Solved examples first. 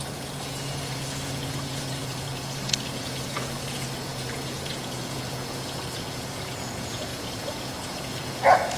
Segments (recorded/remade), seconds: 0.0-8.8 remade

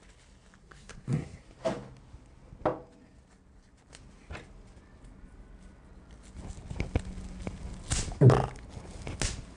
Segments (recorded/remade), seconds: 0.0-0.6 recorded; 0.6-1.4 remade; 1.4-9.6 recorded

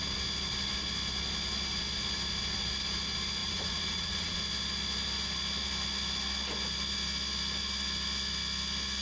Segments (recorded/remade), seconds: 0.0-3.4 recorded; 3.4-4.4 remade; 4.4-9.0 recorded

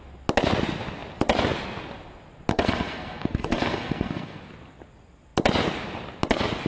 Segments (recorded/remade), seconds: 0.0-2.5 recorded; 2.5-4.4 remade; 4.4-6.7 recorded